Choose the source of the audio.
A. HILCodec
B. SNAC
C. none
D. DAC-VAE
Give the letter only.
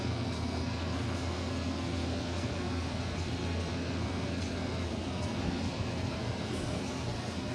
B